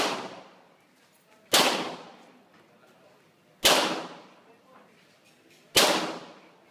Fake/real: real